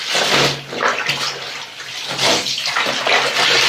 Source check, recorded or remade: recorded